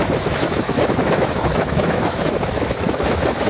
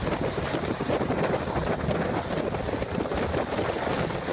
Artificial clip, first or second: first